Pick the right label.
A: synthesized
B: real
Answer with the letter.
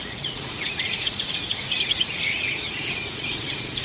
A